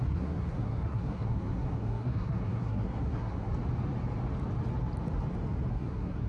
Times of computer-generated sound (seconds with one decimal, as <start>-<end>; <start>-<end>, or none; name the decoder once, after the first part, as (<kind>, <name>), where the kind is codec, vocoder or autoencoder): 0.0-3.5 (codec, SNAC); 5.7-6.3